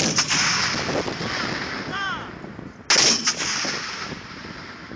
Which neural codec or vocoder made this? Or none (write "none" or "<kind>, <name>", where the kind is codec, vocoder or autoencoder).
none